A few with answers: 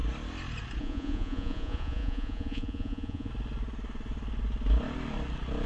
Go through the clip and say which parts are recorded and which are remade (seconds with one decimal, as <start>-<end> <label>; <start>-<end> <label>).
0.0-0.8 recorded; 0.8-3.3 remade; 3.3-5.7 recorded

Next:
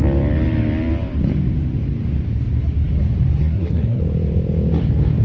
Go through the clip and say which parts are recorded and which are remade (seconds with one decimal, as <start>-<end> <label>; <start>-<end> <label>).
0.0-3.4 recorded; 3.4-4.0 remade; 4.0-5.2 recorded

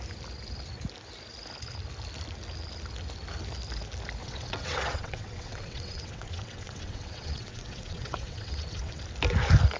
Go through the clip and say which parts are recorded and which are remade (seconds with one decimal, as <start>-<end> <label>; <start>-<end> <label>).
0.0-4.2 recorded; 4.2-9.0 remade; 9.0-9.8 recorded